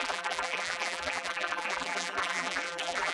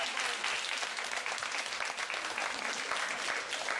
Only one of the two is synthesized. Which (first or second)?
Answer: first